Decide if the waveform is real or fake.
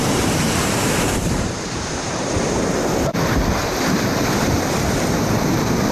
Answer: fake